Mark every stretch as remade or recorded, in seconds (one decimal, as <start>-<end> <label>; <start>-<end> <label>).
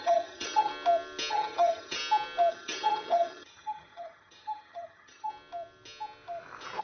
0.0-0.7 remade; 0.7-1.3 recorded; 1.3-2.0 remade; 2.0-2.5 recorded; 2.5-5.3 remade; 5.3-6.8 recorded